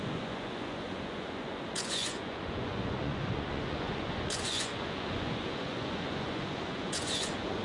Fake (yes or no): yes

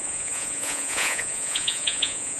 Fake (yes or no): yes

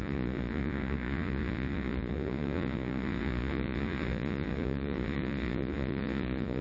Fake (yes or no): yes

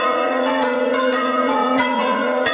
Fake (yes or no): yes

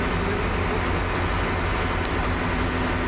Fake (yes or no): no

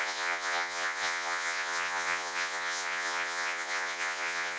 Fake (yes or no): yes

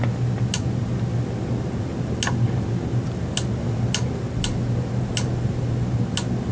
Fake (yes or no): no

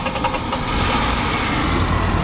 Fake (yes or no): no